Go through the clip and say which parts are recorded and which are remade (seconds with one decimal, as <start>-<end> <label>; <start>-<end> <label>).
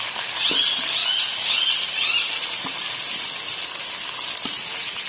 0.0-5.1 recorded